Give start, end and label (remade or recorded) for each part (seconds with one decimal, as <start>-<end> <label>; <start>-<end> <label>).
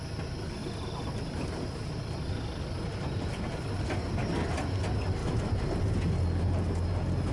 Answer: 0.0-0.6 recorded; 0.6-1.9 remade; 1.9-5.2 recorded; 5.2-5.8 remade; 5.8-7.3 recorded